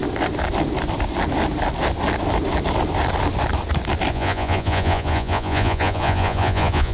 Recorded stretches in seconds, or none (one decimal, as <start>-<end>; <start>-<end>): 0.0-4.1